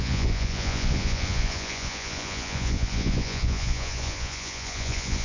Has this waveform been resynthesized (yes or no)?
yes